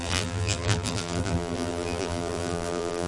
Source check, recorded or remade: remade